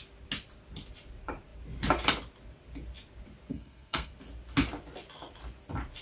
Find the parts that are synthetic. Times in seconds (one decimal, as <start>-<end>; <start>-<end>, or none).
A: 3.5-4.1